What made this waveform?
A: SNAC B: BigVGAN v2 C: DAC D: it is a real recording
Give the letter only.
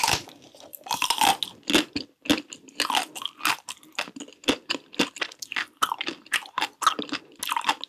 D